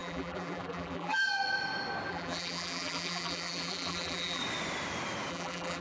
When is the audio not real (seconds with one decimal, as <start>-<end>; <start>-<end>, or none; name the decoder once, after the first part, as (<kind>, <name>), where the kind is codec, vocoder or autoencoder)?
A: 0.0-1.2 (vocoder, BigVGAN v2); 2.1-4.4; 5.3-5.8